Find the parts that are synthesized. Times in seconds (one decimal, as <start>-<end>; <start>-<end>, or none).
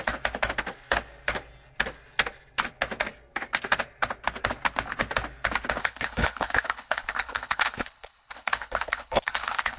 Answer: 5.8-9.8